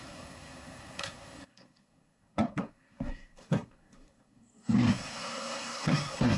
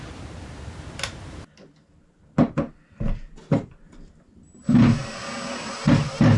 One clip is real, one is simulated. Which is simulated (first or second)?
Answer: first